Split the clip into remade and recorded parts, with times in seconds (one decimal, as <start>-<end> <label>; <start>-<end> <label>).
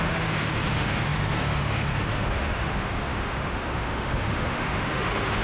0.0-5.4 remade